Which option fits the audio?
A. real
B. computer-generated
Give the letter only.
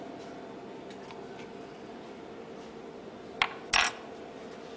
A